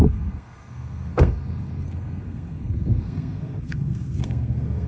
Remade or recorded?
remade